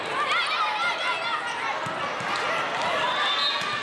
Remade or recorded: recorded